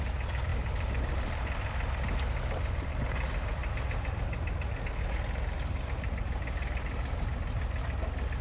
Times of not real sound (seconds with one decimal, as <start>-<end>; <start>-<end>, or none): 0.5-2.9